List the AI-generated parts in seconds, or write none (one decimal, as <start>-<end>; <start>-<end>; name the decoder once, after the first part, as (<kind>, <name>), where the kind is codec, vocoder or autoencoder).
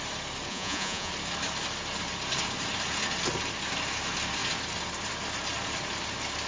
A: 0.5-1.1 (vocoder, Vocos)